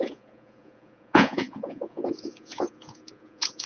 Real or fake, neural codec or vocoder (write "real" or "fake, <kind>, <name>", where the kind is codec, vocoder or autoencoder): fake, vocoder, Vocos